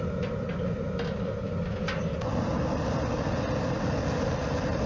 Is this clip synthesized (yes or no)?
no